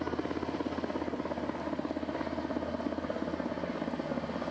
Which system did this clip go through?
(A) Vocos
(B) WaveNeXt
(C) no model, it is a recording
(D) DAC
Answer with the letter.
C